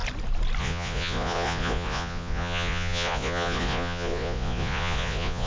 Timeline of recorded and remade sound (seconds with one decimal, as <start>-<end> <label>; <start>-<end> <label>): 0.0-0.6 recorded; 0.6-5.5 remade